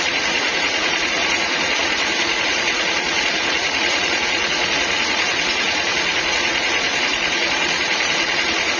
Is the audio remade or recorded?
remade